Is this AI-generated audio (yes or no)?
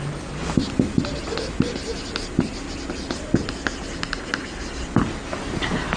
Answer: no